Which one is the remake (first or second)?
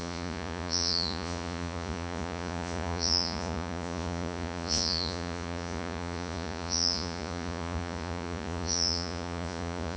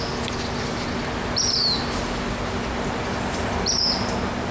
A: first